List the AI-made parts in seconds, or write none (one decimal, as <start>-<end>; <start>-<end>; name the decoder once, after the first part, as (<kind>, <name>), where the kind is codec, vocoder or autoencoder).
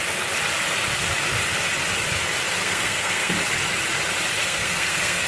2.6-3.3 (codec, SNAC); 4.4-5.3